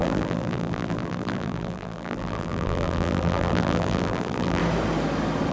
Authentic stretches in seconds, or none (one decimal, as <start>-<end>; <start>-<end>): 4.6-5.5